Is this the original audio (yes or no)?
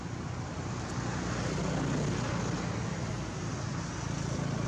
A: yes